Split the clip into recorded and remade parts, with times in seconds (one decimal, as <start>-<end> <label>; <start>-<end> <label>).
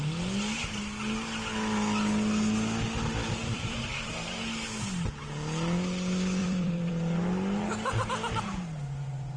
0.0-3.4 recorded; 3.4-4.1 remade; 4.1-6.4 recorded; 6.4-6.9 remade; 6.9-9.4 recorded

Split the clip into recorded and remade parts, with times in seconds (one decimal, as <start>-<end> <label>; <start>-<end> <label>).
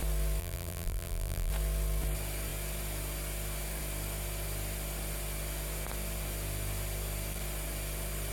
0.0-0.4 recorded; 0.4-1.5 remade; 1.5-8.3 recorded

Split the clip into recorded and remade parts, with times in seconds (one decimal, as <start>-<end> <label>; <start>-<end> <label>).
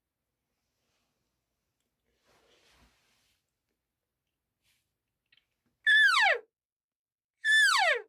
0.0-8.1 recorded